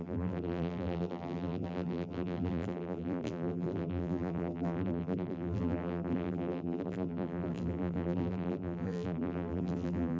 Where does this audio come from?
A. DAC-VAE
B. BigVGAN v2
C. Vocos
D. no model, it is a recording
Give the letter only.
B